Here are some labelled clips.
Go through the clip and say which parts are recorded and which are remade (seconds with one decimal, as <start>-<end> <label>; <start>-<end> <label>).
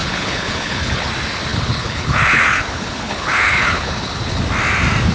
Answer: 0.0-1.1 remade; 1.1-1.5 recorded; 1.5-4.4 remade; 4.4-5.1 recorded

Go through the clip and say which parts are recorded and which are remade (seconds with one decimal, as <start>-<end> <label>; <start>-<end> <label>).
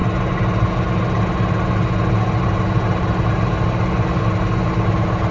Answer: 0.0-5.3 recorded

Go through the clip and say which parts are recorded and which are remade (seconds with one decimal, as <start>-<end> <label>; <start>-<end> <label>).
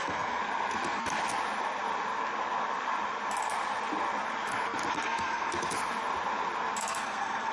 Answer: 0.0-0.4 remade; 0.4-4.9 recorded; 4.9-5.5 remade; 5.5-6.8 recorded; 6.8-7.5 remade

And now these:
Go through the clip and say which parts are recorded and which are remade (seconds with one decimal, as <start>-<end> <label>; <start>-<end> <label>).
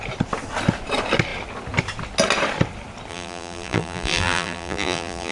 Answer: 0.0-3.1 recorded; 3.1-5.3 remade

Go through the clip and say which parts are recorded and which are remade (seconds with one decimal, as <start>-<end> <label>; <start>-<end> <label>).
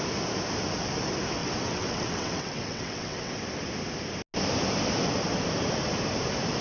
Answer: 0.0-1.4 recorded; 1.4-3.3 remade; 3.3-6.6 recorded